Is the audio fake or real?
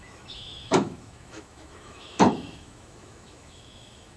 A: fake